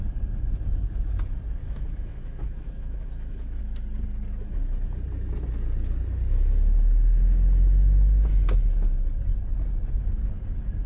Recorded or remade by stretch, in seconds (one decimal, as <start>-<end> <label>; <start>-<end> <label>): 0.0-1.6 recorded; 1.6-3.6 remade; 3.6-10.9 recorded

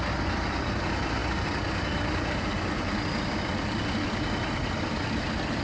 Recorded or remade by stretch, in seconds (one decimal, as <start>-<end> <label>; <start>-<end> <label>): 0.0-5.6 recorded

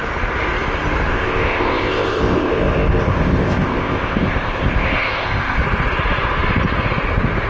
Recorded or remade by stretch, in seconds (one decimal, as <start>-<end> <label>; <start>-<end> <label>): 0.0-1.1 recorded; 1.1-5.6 remade; 5.6-7.5 recorded